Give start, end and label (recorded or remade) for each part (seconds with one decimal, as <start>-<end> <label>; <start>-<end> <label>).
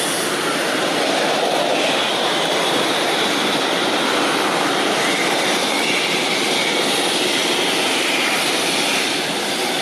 0.0-7.4 recorded; 7.4-9.8 remade